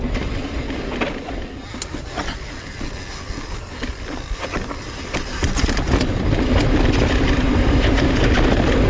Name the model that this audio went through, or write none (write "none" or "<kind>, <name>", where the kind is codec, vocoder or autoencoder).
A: none